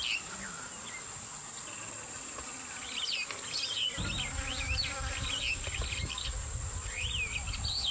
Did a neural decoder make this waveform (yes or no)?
no